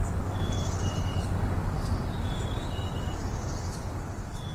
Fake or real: fake